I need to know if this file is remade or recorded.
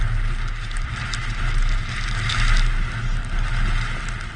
recorded